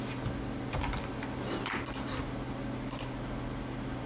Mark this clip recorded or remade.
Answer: recorded